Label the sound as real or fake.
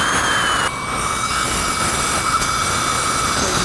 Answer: real